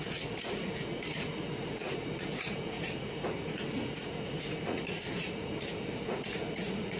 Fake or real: fake